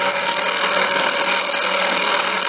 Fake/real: fake